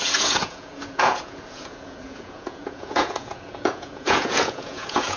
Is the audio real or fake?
fake